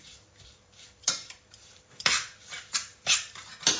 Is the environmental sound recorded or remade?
remade